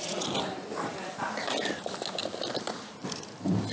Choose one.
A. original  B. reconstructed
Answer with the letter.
A